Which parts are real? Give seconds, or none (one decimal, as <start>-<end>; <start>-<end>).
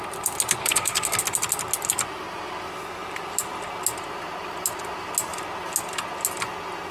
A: 0.0-0.6; 1.2-6.9